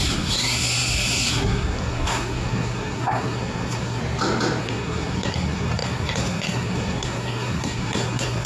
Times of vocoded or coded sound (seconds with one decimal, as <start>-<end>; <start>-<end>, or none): 0.0-4.0; 4.6-8.5